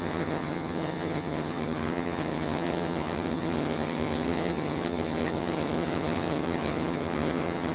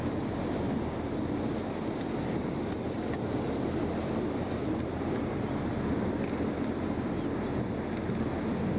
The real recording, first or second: second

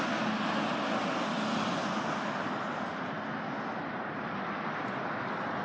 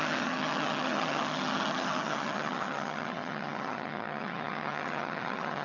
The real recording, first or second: first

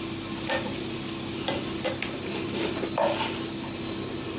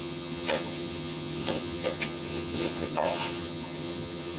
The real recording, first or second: first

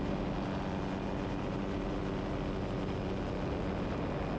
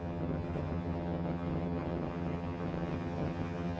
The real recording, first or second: first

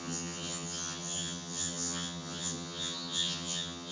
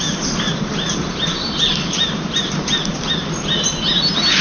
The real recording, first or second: second